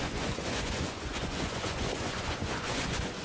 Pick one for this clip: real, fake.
fake